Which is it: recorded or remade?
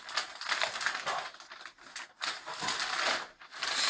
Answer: recorded